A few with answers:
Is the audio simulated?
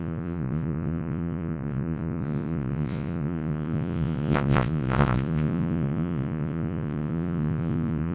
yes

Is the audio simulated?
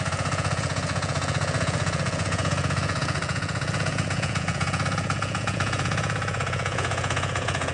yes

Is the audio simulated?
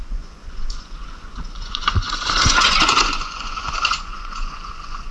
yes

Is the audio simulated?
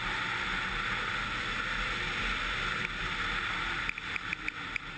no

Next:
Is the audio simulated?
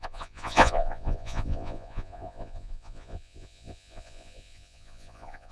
yes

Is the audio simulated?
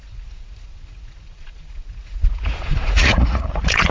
yes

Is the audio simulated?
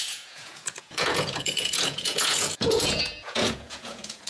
yes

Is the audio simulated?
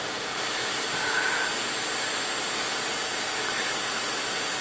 no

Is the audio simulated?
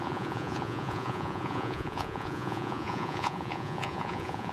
yes